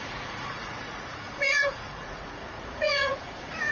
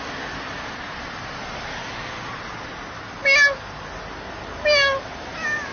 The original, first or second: second